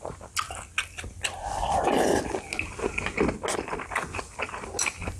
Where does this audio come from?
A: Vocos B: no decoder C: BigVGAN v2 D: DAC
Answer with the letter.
B